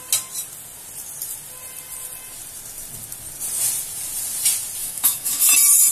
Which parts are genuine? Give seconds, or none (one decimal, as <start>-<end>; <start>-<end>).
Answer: 0.0-4.8; 5.4-5.9